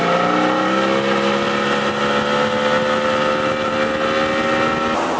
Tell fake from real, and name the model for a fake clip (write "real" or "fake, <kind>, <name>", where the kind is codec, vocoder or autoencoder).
real